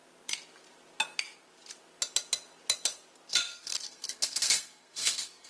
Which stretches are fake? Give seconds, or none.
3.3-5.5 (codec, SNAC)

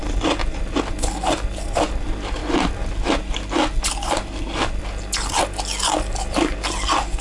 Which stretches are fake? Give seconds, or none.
none

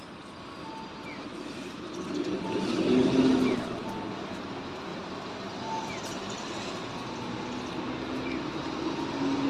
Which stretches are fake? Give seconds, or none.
none

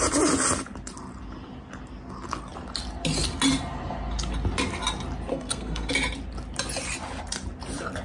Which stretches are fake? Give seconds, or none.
5.3-5.9 (codec, SNAC)

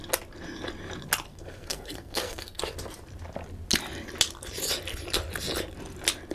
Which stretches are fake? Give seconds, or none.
1.3-2.6 (codec, SNAC)